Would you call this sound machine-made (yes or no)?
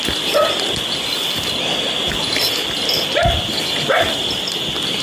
no